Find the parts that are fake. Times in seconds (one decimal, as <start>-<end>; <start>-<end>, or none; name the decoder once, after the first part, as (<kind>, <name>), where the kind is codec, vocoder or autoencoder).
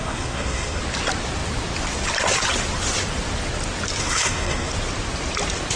0.0-0.8 (codec, SNAC); 4.0-4.7